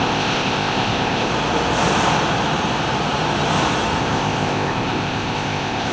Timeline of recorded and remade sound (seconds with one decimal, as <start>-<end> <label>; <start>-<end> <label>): 0.0-1.3 remade; 1.3-4.0 recorded; 4.0-5.9 remade